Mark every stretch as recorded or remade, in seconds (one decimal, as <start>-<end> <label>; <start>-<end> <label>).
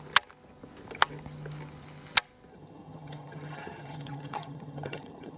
0.0-2.5 recorded; 2.5-5.4 remade